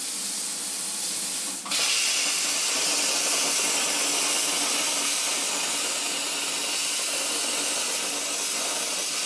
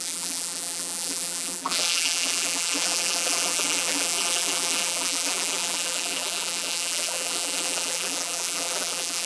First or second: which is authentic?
first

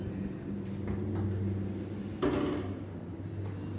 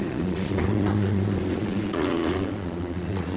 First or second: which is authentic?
first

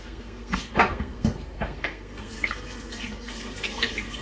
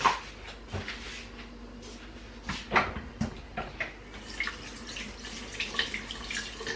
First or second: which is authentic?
second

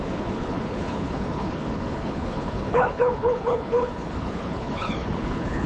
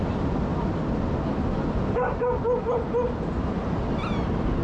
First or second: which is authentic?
second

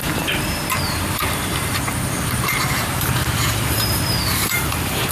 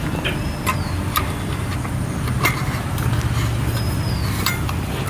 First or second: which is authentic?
second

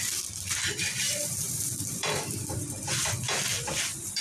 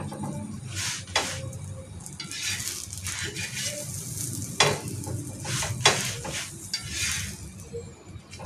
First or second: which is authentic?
second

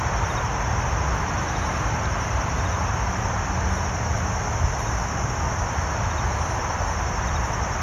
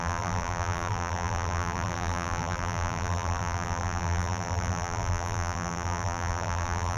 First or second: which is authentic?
first